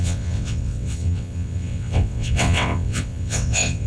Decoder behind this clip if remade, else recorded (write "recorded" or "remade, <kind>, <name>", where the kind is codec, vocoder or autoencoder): remade, vocoder, WaveNeXt